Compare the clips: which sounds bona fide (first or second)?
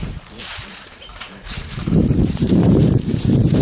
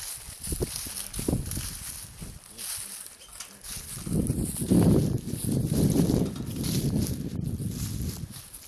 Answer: second